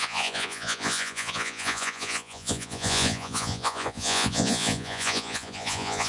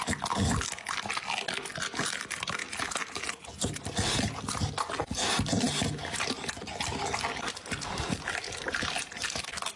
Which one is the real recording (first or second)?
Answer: second